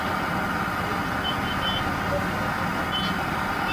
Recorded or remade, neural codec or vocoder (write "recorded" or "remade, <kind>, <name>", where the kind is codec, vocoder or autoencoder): recorded